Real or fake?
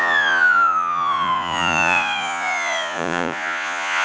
fake